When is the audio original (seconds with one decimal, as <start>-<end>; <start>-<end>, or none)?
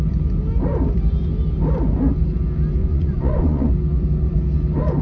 0.0-2.8; 3.7-5.0